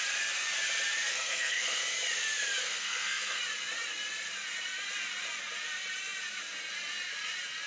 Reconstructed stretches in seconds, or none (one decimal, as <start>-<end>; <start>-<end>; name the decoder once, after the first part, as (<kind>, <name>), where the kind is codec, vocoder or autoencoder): 1.1-1.8 (codec, SNAC); 2.6-3.4